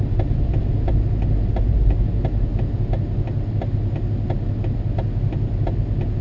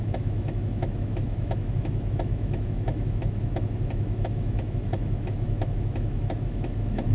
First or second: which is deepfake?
second